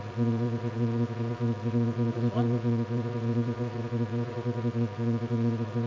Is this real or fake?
fake